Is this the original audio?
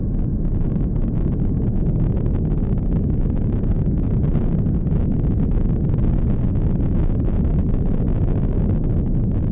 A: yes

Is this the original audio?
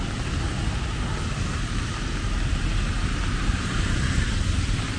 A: yes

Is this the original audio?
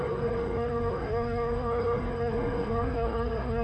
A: no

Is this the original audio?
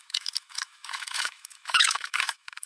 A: no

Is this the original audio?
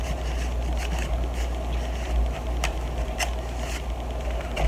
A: yes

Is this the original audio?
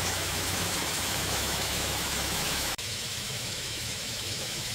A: no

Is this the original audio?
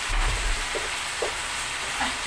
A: yes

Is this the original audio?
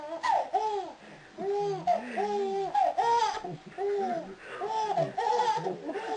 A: yes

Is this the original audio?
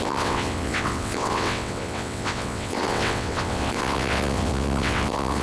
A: no